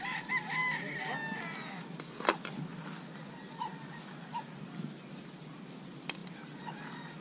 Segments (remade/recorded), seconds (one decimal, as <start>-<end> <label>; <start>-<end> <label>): 0.0-7.2 recorded